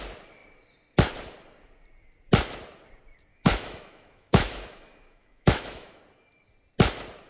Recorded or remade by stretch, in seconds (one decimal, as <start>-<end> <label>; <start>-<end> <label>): 0.0-3.3 recorded; 3.3-6.0 remade; 6.0-7.3 recorded